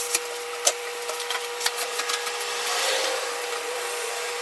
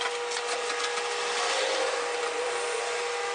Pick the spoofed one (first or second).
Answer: first